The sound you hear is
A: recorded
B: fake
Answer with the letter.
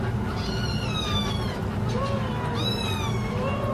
A